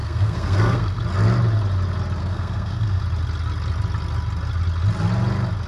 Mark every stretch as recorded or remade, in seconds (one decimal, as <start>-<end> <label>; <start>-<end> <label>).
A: 0.0-1.0 remade; 1.0-2.2 recorded; 2.2-3.0 remade; 3.0-5.7 recorded